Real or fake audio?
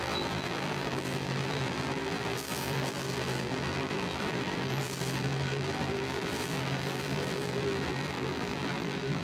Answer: fake